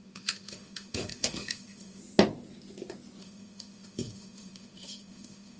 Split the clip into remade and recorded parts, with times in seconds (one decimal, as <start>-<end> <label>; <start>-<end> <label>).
0.0-2.0 remade; 2.0-3.2 recorded; 3.2-5.6 remade